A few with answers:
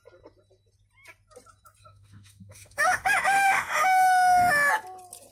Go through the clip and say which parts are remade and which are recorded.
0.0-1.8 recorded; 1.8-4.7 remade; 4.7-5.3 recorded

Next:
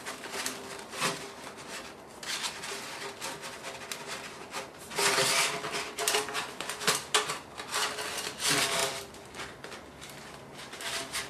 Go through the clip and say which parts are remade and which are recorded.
0.0-11.3 recorded

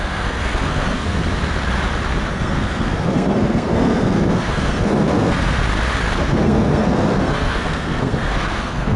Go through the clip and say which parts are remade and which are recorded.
0.0-1.2 remade; 1.2-2.3 recorded; 2.3-5.6 remade; 5.6-6.2 recorded; 6.2-9.0 remade

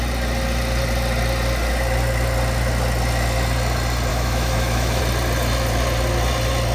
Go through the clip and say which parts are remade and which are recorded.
0.0-4.1 recorded; 4.1-5.0 remade; 5.0-6.7 recorded

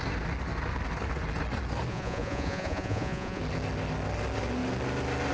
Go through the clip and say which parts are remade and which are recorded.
0.0-1.9 recorded; 1.9-3.4 remade; 3.4-5.3 recorded

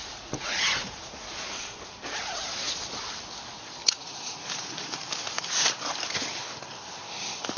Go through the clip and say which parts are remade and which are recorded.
0.0-1.3 remade; 1.3-3.8 recorded; 3.8-4.4 remade; 4.4-7.6 recorded

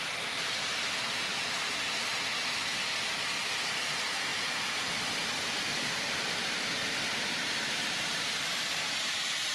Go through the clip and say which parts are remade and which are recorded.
0.0-1.3 remade; 1.3-3.8 recorded; 3.8-9.5 remade

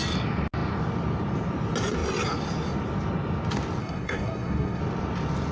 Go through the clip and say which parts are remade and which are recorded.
0.0-3.8 recorded; 3.8-4.8 remade; 4.8-5.5 recorded